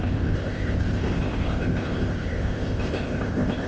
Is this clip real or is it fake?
fake